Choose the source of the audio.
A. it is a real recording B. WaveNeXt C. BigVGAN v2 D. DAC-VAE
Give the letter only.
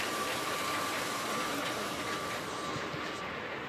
C